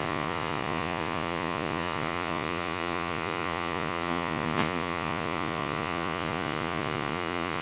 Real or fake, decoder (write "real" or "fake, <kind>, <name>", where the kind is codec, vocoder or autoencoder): fake, vocoder, Vocos